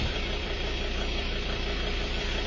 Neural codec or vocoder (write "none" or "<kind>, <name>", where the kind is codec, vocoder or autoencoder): vocoder, BigVGAN v2